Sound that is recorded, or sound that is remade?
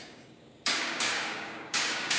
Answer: remade